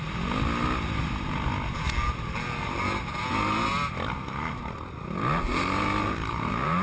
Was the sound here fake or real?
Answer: real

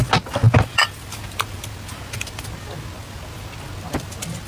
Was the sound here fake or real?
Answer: real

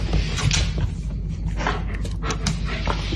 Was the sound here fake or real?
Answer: real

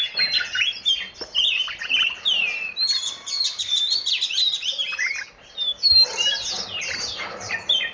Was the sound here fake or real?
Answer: real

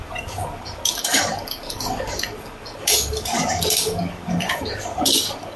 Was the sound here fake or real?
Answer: fake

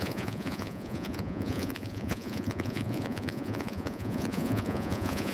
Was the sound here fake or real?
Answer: fake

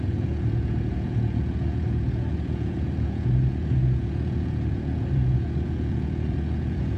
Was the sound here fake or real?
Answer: fake